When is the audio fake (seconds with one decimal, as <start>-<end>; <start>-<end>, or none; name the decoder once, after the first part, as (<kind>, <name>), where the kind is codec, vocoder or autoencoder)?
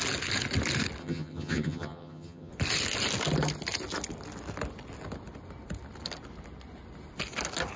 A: 1.0-2.5 (vocoder, HiFi-GAN)